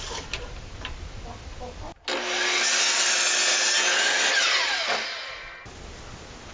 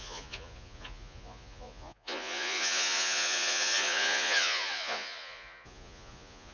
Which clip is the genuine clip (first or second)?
first